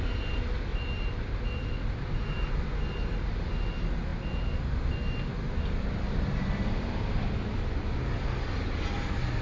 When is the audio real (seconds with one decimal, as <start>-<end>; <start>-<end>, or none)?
0.0-0.7; 2.5-9.4